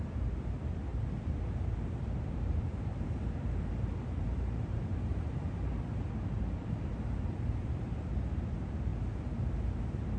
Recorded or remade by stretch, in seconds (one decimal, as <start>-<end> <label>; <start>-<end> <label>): 0.0-10.2 remade

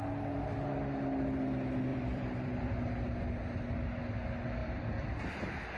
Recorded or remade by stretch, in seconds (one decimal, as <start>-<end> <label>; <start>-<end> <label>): 0.0-1.9 recorded; 1.9-2.7 remade; 2.7-4.6 recorded; 4.6-5.2 remade; 5.2-5.8 recorded